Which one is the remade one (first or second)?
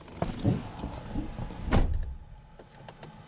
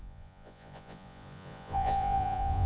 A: second